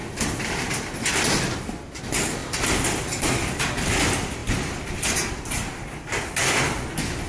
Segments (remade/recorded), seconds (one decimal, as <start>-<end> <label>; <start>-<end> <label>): 0.0-4.4 recorded; 4.4-5.4 remade; 5.4-7.3 recorded